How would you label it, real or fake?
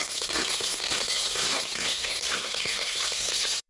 fake